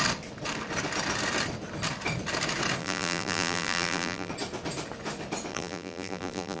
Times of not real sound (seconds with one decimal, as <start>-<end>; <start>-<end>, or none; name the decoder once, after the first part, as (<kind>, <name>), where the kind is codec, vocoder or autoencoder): 2.8-4.3 (vocoder, BigVGAN v2); 5.5-6.6